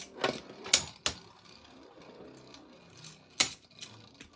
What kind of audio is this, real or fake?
real